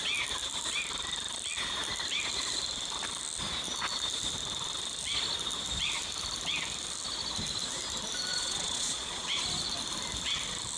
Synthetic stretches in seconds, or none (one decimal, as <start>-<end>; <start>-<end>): 8.3-9.2